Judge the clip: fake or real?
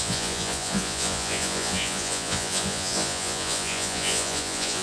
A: fake